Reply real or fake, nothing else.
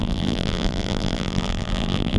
fake